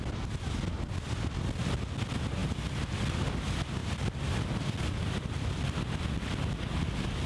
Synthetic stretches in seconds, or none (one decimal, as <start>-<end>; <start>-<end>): 2.4-2.9